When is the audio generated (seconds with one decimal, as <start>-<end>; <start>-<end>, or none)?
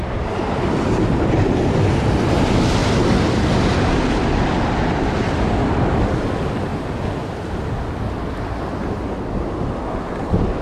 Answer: 2.8-3.5